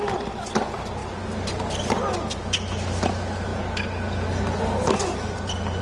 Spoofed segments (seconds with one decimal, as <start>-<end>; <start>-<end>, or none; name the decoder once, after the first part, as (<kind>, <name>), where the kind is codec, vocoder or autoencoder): none